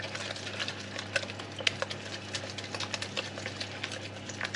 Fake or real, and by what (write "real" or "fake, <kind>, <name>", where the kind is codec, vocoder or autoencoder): real